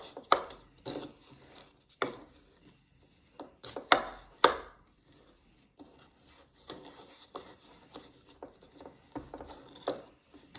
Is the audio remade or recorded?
recorded